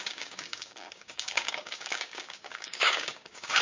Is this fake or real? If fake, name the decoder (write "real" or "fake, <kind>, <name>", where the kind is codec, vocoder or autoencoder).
fake, codec, DAC